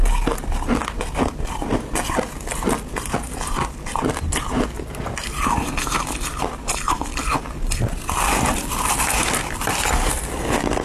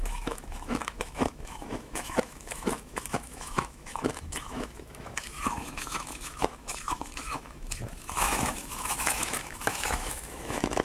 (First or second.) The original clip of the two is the first